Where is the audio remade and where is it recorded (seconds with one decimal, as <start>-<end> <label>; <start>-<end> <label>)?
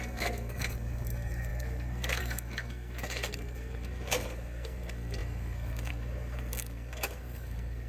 0.0-7.9 remade